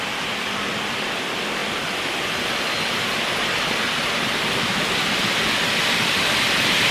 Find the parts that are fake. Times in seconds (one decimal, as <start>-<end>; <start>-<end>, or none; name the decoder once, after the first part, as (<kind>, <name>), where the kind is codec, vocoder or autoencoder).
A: none